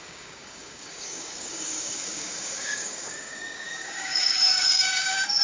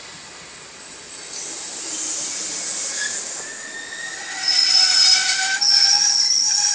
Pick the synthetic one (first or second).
first